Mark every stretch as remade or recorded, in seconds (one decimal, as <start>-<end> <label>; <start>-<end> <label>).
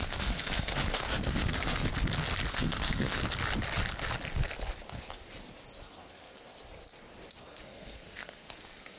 0.0-1.9 remade; 1.9-2.5 recorded; 2.5-3.2 remade; 3.2-5.8 recorded; 5.8-6.5 remade; 6.5-7.4 recorded; 7.4-9.0 remade